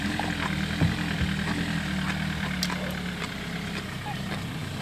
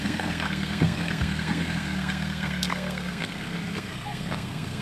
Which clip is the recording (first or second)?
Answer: first